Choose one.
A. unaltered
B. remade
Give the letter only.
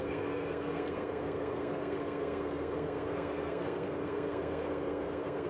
B